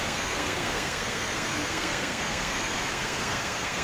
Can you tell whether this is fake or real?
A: fake